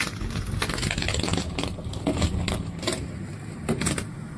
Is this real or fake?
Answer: real